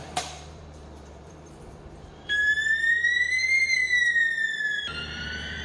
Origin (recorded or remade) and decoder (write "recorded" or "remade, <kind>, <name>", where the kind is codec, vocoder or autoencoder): remade, vocoder, BigVGAN v2